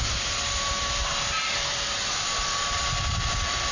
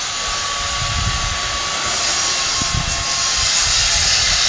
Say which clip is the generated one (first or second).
first